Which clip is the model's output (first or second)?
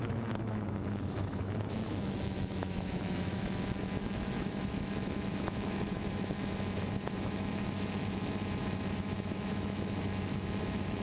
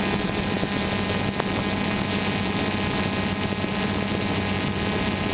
first